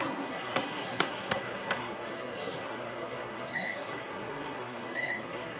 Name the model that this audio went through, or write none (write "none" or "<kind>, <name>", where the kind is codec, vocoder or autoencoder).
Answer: codec, SNAC